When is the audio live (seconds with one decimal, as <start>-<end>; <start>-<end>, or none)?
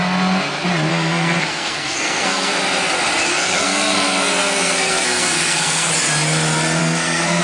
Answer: 0.0-0.9; 2.6-3.3; 5.9-6.8